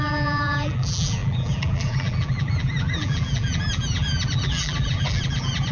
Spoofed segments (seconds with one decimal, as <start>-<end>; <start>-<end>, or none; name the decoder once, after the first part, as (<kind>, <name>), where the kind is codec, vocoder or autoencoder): 0.0-5.7 (vocoder, BigVGAN v2)